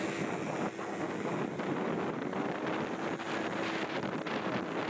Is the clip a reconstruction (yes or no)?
no